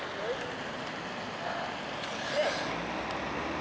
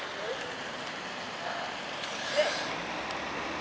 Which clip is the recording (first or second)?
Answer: first